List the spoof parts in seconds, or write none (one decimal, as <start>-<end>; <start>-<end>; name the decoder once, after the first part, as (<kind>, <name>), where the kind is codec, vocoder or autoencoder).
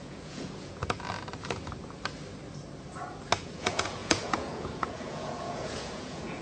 0.0-0.8 (vocoder, Vocos); 3.4-6.4